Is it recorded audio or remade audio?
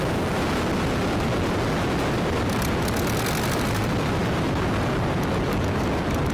remade